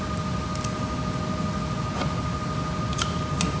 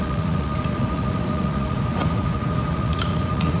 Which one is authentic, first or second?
first